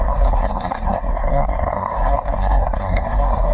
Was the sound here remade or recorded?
remade